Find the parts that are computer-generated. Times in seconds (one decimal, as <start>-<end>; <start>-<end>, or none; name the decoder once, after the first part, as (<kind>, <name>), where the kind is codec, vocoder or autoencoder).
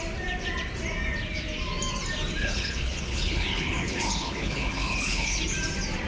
2.4-5.4 (codec, HILCodec)